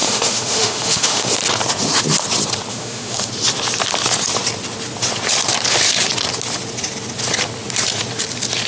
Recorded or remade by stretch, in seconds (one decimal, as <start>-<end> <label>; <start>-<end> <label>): 0.0-1.3 remade; 1.3-2.7 recorded; 2.7-3.3 remade; 3.3-8.7 recorded